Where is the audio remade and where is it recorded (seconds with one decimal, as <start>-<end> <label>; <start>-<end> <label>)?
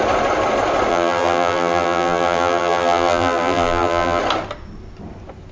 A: 0.0-0.9 recorded; 0.9-4.2 remade; 4.2-5.5 recorded